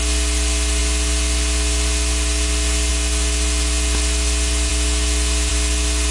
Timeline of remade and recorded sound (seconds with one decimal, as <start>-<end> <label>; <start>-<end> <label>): 0.0-6.1 recorded